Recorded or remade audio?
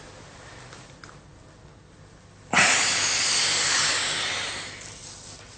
recorded